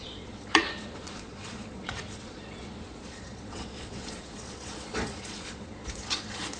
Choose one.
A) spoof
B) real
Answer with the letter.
A